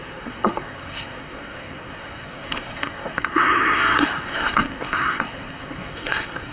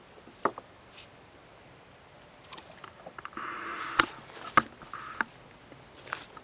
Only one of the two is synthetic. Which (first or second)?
first